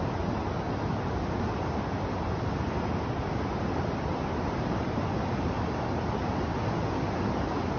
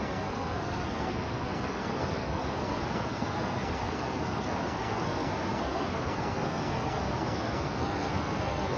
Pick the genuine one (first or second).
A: first